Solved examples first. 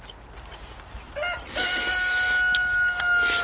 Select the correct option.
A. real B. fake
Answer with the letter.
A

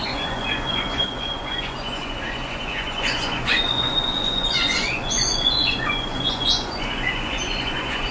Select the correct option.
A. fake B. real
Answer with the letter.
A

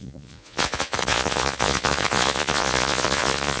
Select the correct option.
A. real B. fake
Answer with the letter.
B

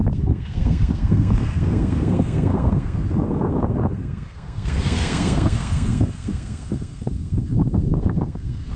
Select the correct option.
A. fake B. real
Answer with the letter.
A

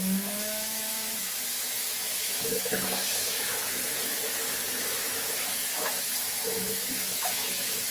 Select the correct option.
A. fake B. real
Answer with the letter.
A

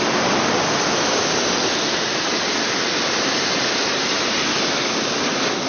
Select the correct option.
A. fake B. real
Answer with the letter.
B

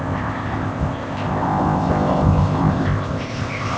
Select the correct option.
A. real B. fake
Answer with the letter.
B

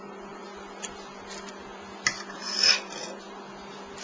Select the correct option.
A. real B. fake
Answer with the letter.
A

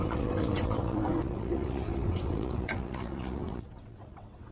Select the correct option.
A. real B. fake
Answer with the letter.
B